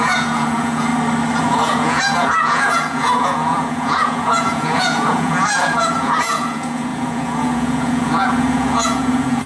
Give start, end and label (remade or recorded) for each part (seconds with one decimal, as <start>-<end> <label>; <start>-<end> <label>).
0.0-0.9 remade; 0.9-1.4 recorded; 1.4-9.5 remade